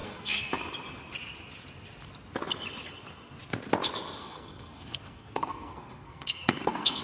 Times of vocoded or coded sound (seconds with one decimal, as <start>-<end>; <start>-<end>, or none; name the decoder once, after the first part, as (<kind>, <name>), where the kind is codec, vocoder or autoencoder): 0.0-0.5 (codec, SNAC); 4.2-7.0